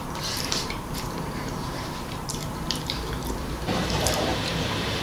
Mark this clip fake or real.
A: fake